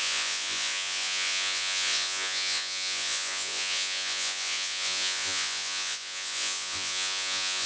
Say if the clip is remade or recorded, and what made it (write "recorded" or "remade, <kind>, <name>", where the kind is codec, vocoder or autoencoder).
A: remade, vocoder, Vocos